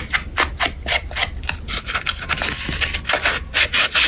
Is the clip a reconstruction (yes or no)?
no